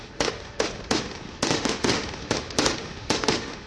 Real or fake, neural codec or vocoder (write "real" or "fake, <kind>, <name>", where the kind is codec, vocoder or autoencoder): fake, autoencoder, DAC-VAE